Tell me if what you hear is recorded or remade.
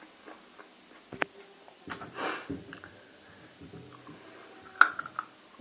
recorded